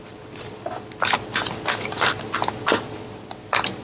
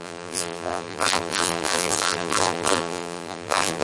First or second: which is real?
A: first